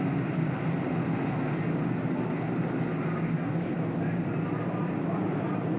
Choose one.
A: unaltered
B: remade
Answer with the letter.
A